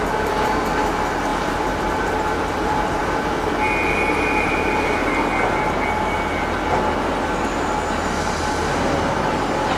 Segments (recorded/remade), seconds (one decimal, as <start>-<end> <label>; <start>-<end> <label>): 0.0-9.8 recorded